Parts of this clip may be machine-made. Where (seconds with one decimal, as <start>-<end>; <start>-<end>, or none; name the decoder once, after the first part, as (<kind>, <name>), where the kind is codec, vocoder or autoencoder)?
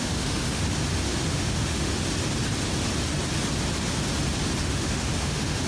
0.0-0.6 (autoencoder, DAC-VAE); 1.3-1.9; 4.6-5.7